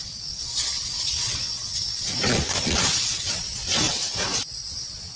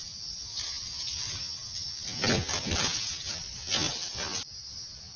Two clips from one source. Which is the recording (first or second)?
second